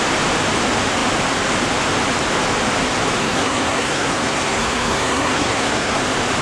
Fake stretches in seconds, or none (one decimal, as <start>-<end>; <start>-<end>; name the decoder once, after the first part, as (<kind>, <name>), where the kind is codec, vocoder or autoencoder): 3.2-6.0 (codec, SNAC)